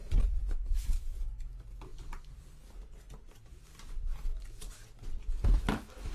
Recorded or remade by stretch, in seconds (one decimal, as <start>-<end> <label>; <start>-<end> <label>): 0.0-1.2 remade; 1.2-1.9 recorded; 1.9-5.6 remade; 5.6-6.1 recorded